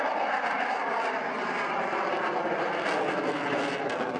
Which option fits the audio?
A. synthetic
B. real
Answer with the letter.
B